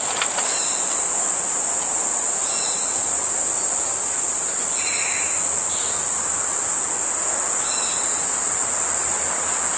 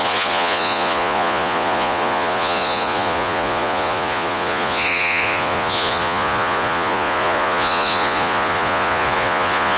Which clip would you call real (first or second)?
first